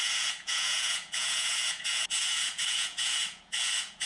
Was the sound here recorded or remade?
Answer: remade